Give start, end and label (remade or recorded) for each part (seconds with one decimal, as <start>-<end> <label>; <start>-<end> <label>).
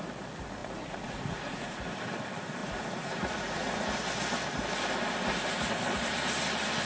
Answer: 0.0-0.6 recorded; 0.6-1.8 remade; 1.8-2.6 recorded; 2.6-3.8 remade; 3.8-6.9 recorded